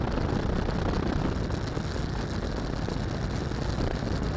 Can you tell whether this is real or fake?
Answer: real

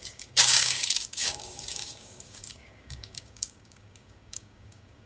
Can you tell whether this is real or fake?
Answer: fake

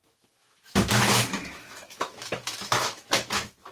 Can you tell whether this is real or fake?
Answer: fake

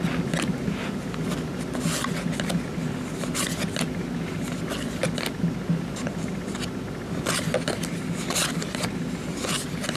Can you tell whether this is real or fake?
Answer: real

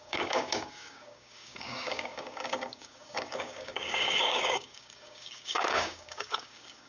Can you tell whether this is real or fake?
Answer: fake